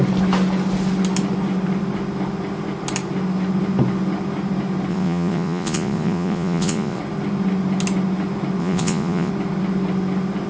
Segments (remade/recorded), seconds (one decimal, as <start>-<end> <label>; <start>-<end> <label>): 0.0-4.9 recorded; 4.9-7.0 remade; 7.0-8.6 recorded; 8.6-9.3 remade; 9.3-10.5 recorded